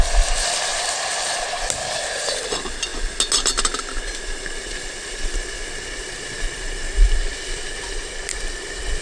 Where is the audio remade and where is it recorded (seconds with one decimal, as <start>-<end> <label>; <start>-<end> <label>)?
0.0-0.7 recorded; 0.7-1.4 remade; 1.4-9.0 recorded